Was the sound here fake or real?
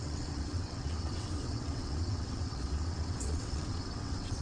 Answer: fake